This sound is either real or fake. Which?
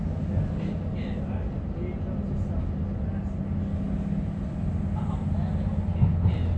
real